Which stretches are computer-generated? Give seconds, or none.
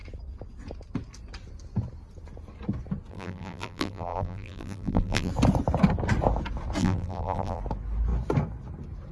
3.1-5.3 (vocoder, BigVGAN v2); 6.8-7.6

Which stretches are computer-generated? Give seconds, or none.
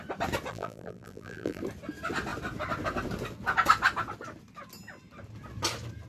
0.5-1.6 (vocoder, BigVGAN v2)